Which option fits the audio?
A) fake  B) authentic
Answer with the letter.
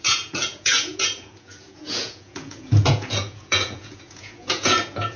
A